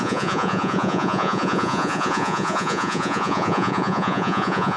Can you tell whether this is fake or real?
fake